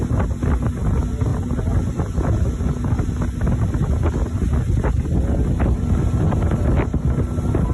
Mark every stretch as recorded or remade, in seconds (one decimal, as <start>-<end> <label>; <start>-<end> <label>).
0.0-7.7 recorded